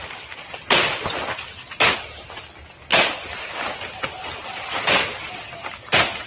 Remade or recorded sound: recorded